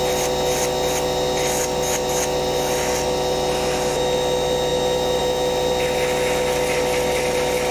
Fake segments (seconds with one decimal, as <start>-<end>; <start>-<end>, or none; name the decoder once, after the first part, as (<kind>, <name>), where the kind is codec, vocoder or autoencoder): none